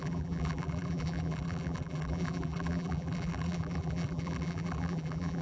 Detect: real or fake fake